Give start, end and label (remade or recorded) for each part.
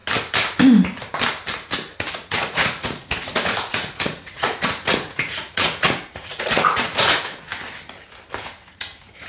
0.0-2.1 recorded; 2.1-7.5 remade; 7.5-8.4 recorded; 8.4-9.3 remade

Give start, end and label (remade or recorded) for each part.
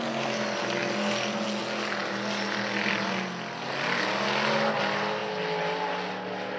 0.0-6.6 recorded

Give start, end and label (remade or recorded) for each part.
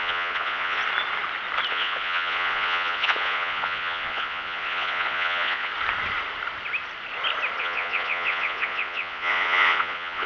0.0-0.8 remade; 0.8-1.7 recorded; 1.7-5.7 remade; 5.7-7.6 recorded; 7.6-10.3 remade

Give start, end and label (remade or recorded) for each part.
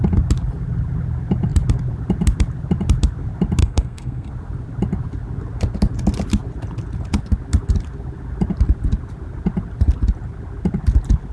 0.0-3.6 recorded; 3.6-4.3 remade; 4.3-11.3 recorded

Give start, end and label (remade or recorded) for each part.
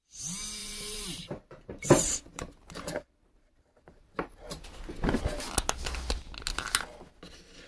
0.0-0.6 recorded; 0.6-5.2 remade; 5.2-7.7 recorded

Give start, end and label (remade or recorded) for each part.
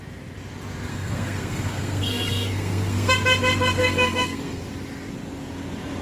0.0-0.9 recorded; 0.9-3.1 remade; 3.1-3.8 recorded; 3.8-4.6 remade; 4.6-6.0 recorded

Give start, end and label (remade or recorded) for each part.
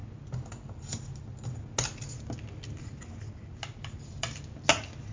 0.0-5.1 recorded